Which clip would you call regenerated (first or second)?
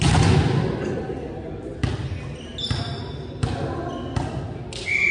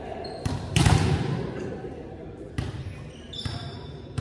second